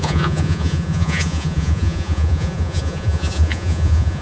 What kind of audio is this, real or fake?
fake